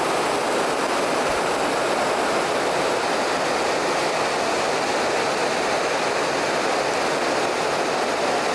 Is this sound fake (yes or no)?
no